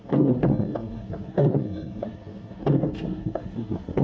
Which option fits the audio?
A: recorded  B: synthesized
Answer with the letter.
B